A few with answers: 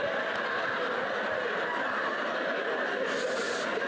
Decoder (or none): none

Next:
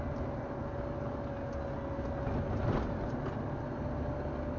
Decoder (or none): none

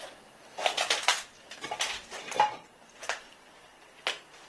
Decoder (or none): none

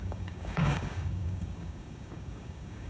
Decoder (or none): codec, DAC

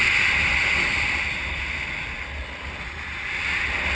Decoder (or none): none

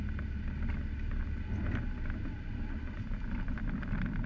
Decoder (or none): none